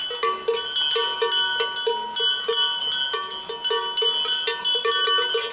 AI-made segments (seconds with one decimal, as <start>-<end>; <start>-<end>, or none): none